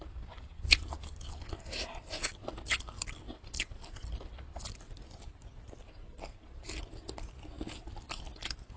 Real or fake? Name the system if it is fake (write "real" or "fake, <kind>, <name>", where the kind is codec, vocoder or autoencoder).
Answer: real